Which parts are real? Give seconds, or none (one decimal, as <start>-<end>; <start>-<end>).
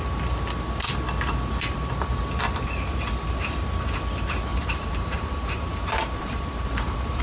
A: 0.0-4.5